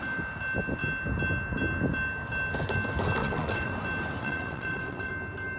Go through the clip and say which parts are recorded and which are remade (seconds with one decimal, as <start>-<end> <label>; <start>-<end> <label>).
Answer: 0.0-3.2 recorded; 3.2-3.7 remade; 3.7-4.2 recorded; 4.2-5.1 remade; 5.1-5.6 recorded